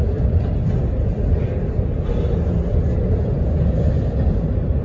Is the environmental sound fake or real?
real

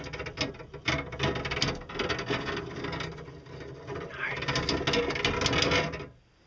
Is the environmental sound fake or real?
real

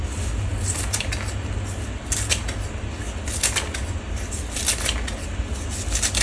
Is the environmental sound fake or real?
real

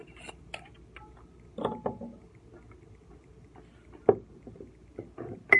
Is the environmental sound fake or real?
real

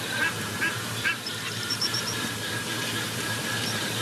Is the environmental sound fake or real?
fake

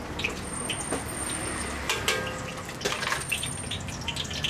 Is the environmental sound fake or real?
real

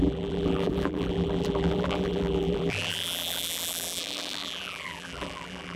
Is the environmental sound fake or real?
fake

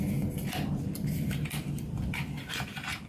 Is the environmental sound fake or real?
fake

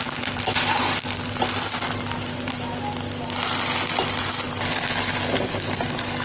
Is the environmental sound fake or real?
real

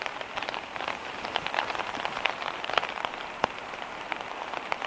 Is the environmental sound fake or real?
fake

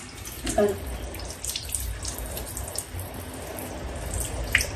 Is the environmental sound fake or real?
fake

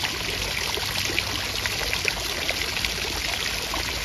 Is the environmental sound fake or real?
real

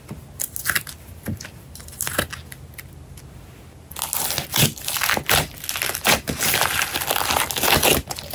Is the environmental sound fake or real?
real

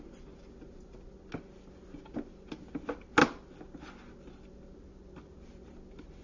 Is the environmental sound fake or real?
real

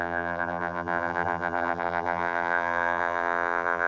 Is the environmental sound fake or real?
fake